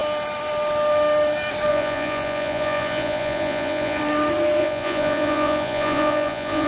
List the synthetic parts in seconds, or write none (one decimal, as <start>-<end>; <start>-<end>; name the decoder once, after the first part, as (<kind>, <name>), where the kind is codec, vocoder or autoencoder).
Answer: 1.7-4.0 (vocoder, Vocos); 4.6-6.7